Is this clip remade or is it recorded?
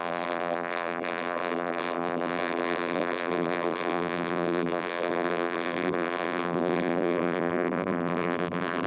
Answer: remade